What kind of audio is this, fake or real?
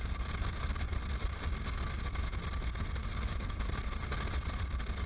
real